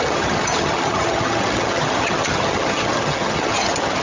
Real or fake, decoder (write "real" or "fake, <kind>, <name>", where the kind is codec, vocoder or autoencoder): fake, vocoder, HiFi-GAN